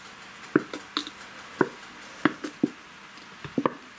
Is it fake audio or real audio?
real